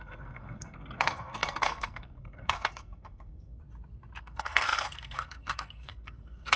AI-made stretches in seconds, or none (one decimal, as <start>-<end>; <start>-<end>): 0.0-3.6; 4.2-6.6

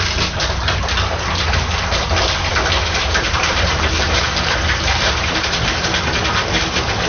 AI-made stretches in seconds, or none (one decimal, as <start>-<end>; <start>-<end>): 3.0-5.8

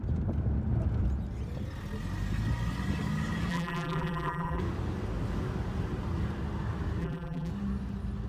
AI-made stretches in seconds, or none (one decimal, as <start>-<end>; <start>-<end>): 3.5-4.6; 7.0-7.5

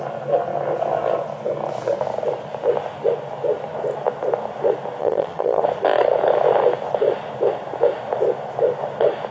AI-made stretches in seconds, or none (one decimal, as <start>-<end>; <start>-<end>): 5.0-5.6

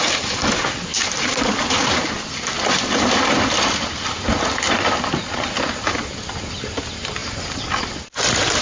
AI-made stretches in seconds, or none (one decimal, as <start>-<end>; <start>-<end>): none

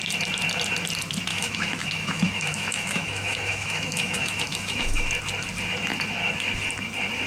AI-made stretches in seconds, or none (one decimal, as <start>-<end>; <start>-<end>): 1.3-5.1

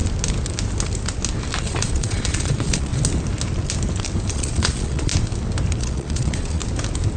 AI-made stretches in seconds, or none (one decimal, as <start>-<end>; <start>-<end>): 1.6-2.9; 4.3-5.1; 5.8-6.6

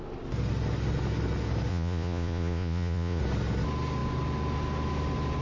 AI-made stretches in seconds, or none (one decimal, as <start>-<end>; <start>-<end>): 1.7-3.2